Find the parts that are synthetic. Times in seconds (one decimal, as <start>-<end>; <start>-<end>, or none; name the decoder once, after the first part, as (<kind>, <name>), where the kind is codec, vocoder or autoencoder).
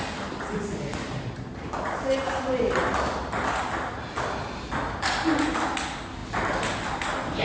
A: 0.9-2.9 (vocoder, BigVGAN v2)